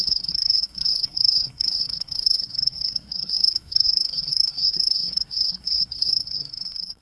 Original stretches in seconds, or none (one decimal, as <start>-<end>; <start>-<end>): none